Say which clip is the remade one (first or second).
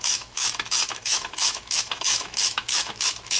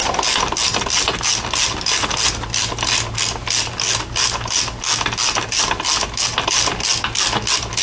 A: first